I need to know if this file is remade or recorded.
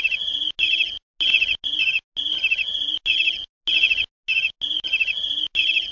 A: recorded